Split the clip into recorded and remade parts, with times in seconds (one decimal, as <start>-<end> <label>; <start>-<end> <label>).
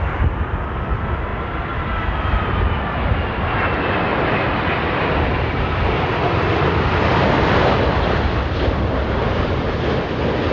0.0-10.5 recorded